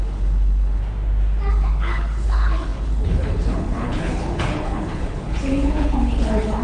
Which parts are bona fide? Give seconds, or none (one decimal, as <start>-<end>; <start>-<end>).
0.8-1.5